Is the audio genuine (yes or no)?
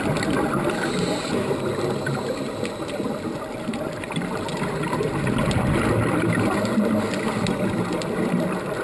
yes